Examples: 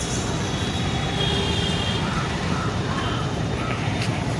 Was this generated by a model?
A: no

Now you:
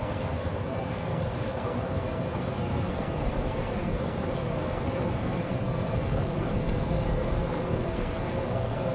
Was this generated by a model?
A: yes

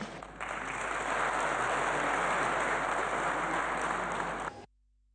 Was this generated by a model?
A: no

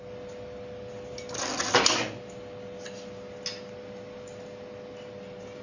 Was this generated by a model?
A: no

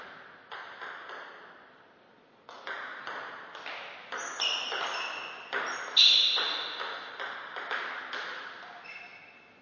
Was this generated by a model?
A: no